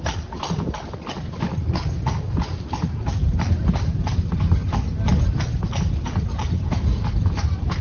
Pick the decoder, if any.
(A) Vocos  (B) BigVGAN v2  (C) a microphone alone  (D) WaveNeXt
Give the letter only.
C